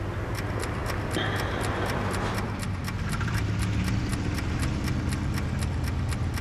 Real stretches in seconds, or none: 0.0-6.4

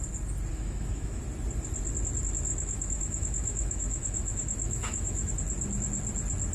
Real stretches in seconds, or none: 0.0-0.5; 1.2-2.5; 5.3-6.5

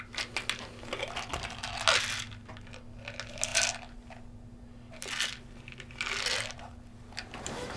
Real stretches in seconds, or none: 0.0-7.8

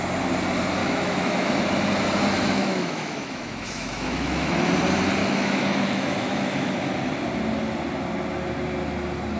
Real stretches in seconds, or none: 0.0-0.8; 1.5-2.6; 4.7-5.2; 6.9-9.4